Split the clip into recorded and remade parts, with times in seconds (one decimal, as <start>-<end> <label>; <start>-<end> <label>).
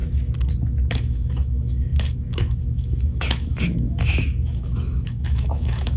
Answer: 0.0-0.9 recorded; 0.9-6.0 remade